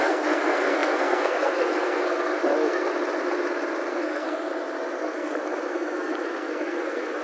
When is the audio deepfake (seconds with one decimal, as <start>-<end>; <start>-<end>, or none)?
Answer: 0.0-2.9; 3.9-4.5; 5.0-7.2